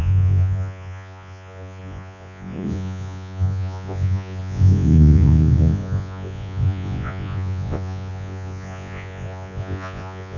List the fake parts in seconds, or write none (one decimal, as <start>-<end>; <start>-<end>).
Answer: 0.0-10.4